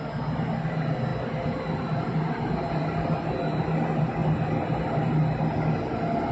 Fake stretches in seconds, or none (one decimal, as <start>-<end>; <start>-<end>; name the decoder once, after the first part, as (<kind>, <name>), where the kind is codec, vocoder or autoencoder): none